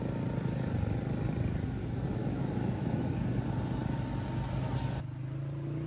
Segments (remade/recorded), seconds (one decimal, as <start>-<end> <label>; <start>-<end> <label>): 0.0-2.2 recorded; 2.2-3.1 remade; 3.1-5.9 recorded